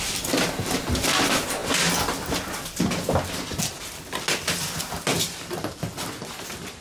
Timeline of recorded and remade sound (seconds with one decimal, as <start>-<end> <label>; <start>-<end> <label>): 0.0-6.8 recorded